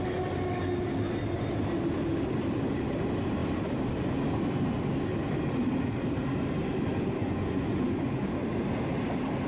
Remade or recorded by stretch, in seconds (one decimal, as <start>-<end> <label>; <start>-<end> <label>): 0.0-7.2 recorded; 7.2-8.2 remade; 8.2-9.5 recorded